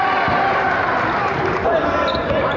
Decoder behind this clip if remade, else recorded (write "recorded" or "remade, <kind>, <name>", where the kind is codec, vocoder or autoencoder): remade, vocoder, BigVGAN v2